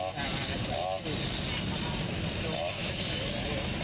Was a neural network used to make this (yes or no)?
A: no